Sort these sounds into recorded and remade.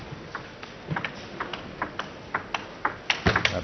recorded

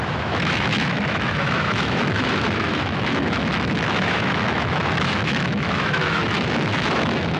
remade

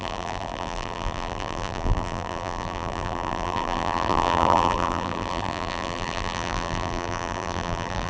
remade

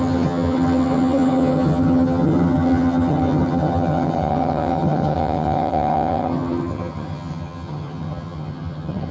remade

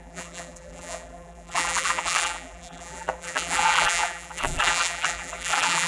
remade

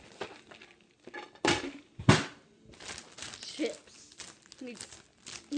recorded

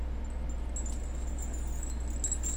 recorded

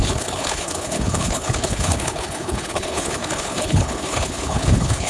remade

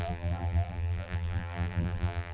remade